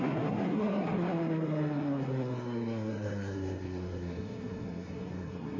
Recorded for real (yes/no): no